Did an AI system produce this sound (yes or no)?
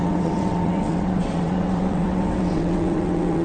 yes